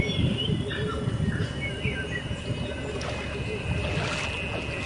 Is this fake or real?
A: real